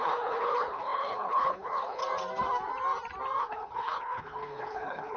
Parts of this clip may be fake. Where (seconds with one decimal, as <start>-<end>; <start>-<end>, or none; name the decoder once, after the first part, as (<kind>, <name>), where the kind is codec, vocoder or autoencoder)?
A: 0.0-2.0 (codec, HILCodec); 3.4-5.2